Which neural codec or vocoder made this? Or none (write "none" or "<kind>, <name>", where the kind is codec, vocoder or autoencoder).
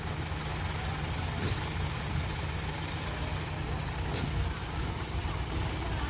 none